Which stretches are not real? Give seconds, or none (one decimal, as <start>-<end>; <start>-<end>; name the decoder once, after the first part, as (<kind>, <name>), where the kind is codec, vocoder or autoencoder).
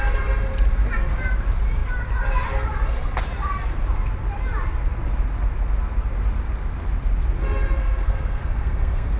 7.8-9.2 (codec, SNAC)